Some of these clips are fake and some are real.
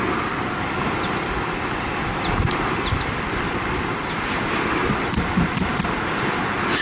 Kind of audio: real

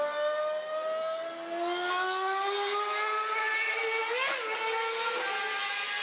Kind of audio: real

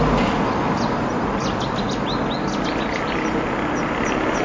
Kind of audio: real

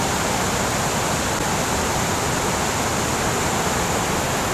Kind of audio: real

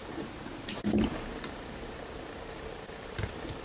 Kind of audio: fake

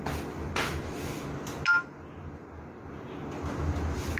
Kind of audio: real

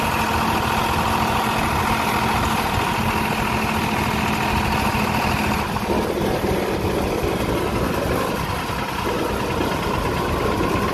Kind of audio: real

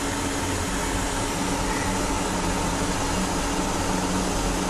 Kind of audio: real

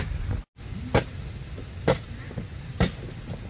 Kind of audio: real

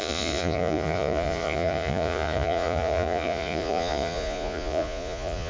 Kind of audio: fake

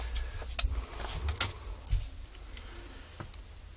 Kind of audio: real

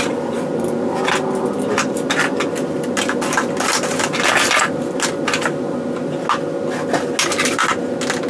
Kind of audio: real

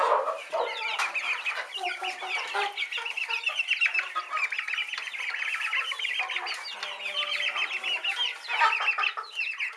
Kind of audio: real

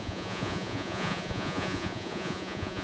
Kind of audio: fake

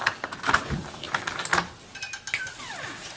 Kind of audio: real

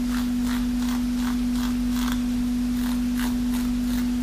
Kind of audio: real